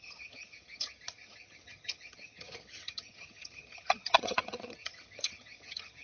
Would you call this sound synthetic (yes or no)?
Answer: yes